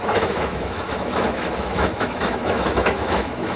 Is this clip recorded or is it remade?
remade